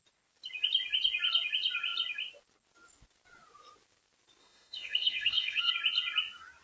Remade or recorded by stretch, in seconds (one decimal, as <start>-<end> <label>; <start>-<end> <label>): 0.0-4.4 recorded; 4.4-5.7 remade; 5.7-6.6 recorded